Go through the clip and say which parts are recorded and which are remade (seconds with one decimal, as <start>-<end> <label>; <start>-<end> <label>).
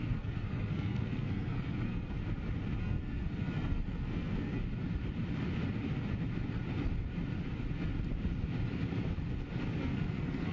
0.0-2.2 remade; 2.2-2.8 recorded; 2.8-4.6 remade; 4.6-9.8 recorded; 9.8-10.5 remade